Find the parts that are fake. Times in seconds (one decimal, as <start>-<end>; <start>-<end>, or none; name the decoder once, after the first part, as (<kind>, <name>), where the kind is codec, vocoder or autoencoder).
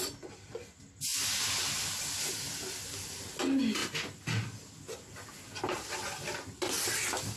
none